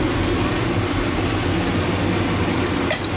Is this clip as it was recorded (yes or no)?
yes